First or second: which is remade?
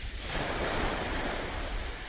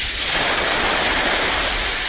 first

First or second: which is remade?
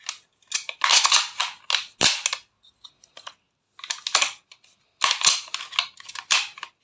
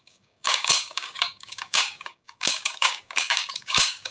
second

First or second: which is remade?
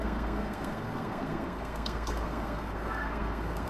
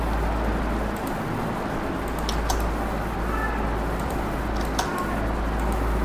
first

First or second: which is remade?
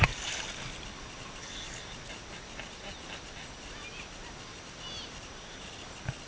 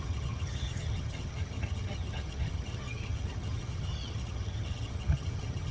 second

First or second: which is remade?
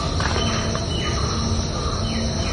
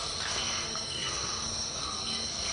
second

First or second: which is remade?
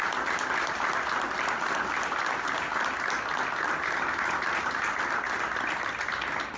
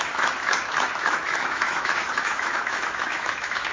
second